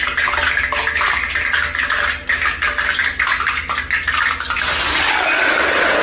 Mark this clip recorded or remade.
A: recorded